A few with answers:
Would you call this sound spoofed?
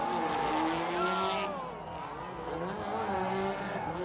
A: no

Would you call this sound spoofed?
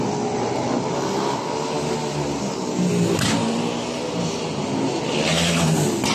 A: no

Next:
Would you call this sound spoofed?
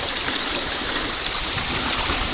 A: yes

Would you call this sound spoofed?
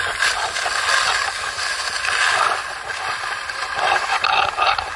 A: no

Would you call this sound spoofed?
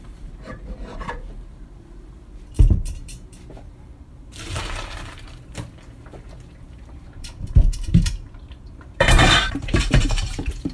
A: yes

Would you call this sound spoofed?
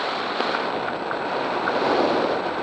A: no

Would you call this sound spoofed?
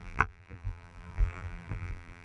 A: yes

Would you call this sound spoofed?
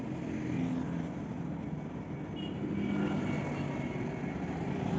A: no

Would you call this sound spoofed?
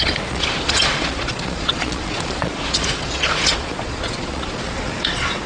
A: yes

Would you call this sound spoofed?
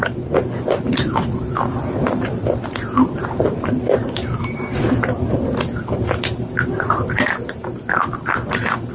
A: yes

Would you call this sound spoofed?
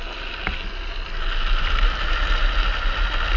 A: no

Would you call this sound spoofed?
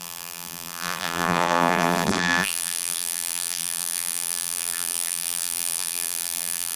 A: yes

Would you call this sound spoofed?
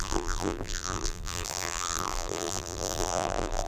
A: yes